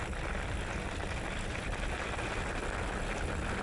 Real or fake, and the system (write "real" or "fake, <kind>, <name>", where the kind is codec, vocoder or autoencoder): real